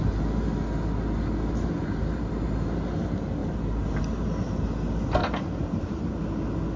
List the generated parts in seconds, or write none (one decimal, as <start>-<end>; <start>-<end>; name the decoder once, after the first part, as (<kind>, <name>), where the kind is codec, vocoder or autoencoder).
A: 1.8-2.3 (vocoder, BigVGAN v2); 3.4-4.0; 5.2-6.2